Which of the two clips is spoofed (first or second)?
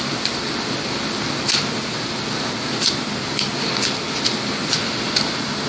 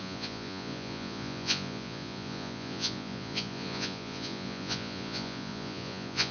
second